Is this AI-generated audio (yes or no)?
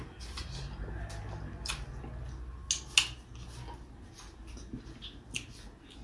no